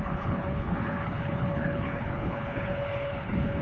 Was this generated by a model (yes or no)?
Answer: yes